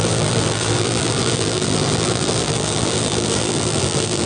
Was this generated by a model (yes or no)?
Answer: yes